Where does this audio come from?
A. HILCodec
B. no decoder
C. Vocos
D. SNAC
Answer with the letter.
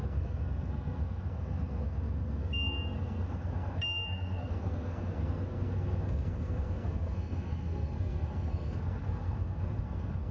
D